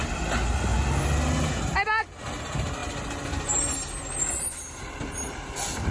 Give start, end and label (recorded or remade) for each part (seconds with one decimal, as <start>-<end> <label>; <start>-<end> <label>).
0.0-5.9 recorded